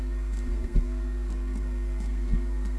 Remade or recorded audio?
remade